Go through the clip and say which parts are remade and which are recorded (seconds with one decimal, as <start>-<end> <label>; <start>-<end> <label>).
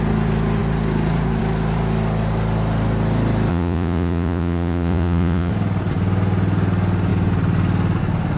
0.0-3.5 recorded; 3.5-5.5 remade; 5.5-8.4 recorded